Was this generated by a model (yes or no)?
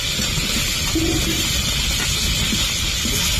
no